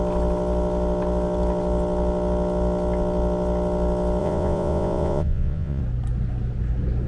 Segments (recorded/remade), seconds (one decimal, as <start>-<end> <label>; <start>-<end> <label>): 0.0-4.2 recorded; 4.2-5.8 remade; 5.8-7.1 recorded